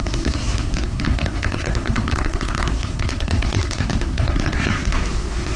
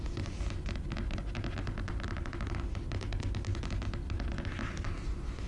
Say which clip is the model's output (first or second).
first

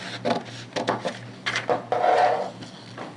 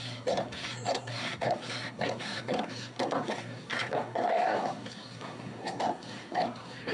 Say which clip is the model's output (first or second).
second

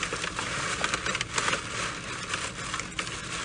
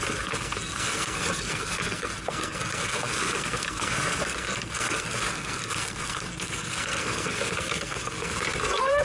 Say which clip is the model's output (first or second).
second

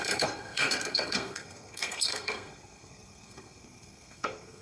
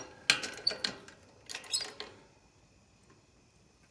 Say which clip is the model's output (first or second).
first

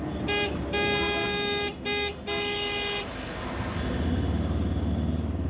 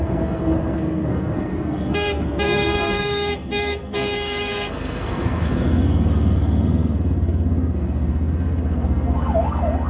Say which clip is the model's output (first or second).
second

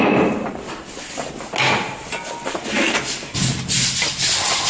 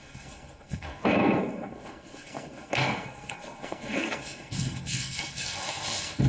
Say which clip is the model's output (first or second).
second